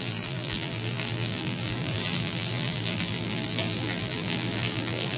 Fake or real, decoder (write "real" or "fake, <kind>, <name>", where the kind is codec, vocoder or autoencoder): fake, vocoder, BigVGAN v2